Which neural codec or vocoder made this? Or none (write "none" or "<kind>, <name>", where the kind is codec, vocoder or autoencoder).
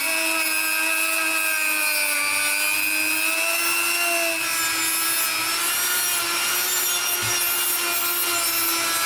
none